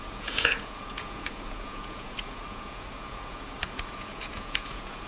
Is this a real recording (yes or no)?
no